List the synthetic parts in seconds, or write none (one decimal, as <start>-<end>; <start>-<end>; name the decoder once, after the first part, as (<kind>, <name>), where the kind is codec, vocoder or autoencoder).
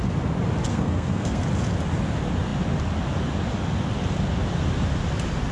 0.7-1.4 (codec, SNAC)